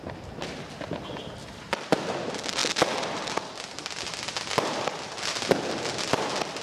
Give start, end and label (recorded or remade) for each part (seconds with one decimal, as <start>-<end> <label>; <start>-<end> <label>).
0.0-1.4 recorded; 1.4-2.0 remade; 2.0-6.6 recorded